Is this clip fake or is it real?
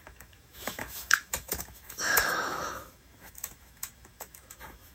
fake